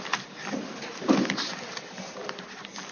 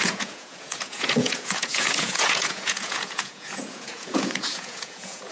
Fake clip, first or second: second